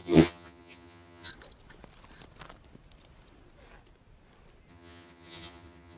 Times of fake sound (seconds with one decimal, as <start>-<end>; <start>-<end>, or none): 0.0-1.3; 4.7-6.0